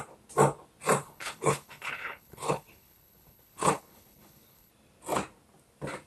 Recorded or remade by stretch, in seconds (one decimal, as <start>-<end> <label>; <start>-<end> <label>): 0.0-1.0 recorded; 1.0-4.7 remade; 4.7-6.1 recorded